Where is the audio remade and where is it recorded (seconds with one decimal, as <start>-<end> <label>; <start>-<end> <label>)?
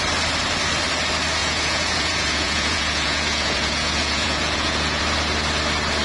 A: 0.0-1.4 recorded; 1.4-5.0 remade; 5.0-6.0 recorded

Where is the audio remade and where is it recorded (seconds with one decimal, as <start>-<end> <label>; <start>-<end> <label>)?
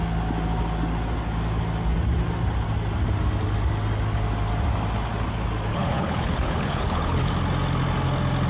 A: 0.0-5.7 recorded; 5.7-7.3 remade; 7.3-8.5 recorded